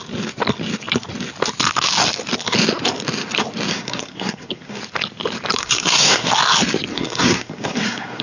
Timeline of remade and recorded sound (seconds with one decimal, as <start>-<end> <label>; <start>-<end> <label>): 0.0-3.7 recorded; 3.7-4.8 remade; 4.8-5.6 recorded; 5.6-6.3 remade; 6.3-6.9 recorded; 6.9-8.2 remade